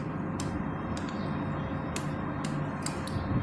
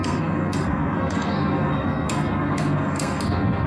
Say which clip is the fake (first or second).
second